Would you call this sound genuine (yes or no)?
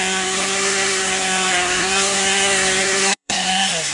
no